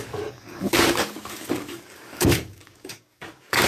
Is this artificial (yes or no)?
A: yes